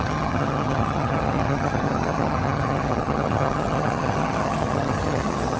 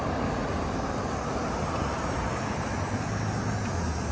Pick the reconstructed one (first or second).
first